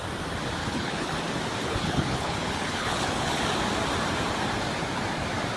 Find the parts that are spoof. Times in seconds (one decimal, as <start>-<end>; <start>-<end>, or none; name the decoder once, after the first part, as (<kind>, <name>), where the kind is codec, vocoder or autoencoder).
0.6-1.2 (codec, HILCodec); 1.6-3.4

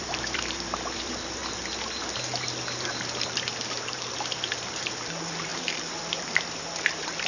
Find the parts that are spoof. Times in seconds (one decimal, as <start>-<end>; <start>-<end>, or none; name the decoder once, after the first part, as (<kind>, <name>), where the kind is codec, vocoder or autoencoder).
0.0-1.4 (vocoder, BigVGAN v2); 2.8-7.3

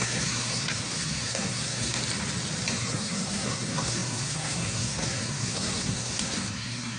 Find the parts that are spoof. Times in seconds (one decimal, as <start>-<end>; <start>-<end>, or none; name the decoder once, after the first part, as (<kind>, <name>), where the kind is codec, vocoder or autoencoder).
0.0-2.0 (codec, SNAC); 2.7-7.0

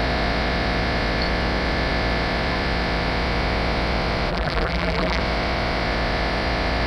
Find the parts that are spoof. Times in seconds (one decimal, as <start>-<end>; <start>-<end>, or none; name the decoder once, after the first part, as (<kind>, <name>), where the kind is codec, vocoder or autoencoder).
4.3-5.2 (vocoder, BigVGAN v2)

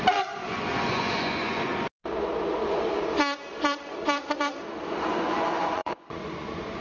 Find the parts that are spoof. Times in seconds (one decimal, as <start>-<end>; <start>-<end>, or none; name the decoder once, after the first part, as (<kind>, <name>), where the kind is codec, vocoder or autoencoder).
0.0-1.7 (vocoder, Vocos); 5.0-6.8

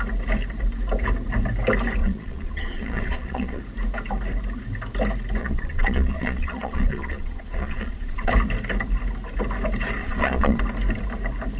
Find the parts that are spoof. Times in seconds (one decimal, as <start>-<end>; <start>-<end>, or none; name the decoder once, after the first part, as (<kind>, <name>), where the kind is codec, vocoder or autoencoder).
2.0-3.6 (vocoder, Vocos); 5.4-8.3; 10.0-10.6

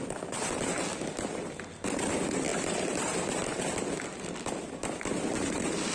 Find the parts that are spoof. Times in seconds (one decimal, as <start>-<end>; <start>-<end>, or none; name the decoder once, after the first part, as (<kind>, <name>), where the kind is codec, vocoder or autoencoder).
2.5-3.6 (vocoder, BigVGAN v2)